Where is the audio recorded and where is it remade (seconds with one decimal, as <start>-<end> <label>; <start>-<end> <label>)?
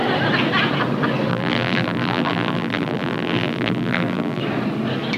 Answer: 0.0-1.3 recorded; 1.3-4.4 remade; 4.4-5.2 recorded